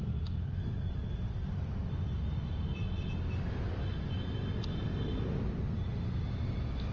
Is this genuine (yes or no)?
yes